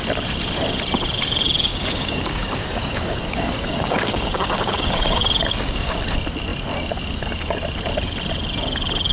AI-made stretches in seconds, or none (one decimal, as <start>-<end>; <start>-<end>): 1.7-6.0